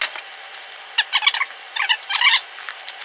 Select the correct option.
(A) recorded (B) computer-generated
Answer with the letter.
A